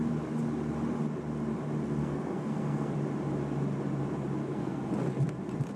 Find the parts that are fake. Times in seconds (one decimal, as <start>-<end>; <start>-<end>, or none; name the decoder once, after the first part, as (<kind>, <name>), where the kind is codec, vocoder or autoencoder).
2.0-2.9 (codec, SNAC); 4.4-4.9